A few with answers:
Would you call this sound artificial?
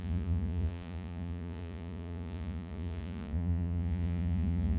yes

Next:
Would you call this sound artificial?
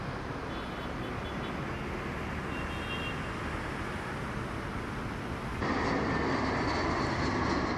no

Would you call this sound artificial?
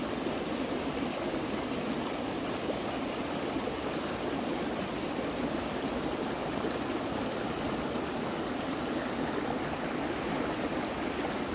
no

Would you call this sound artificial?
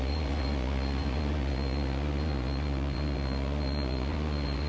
yes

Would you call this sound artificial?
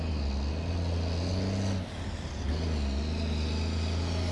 no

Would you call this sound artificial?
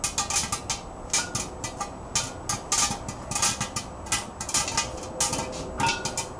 no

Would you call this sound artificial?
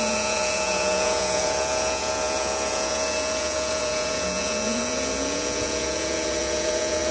yes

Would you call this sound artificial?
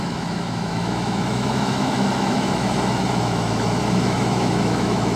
yes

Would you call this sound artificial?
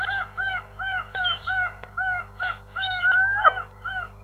yes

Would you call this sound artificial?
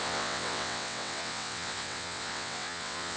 yes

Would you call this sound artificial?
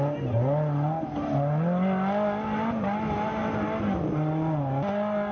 no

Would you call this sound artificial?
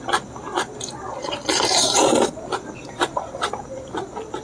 no